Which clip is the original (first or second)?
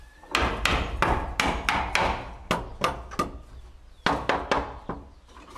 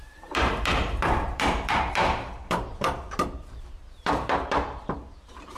first